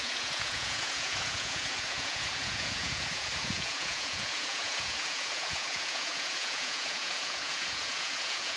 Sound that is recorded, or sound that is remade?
remade